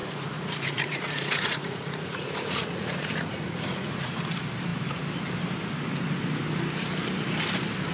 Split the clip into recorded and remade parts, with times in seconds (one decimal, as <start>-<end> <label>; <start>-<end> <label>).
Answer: 0.0-4.2 remade; 4.2-7.9 recorded